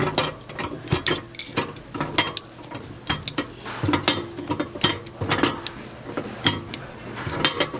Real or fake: real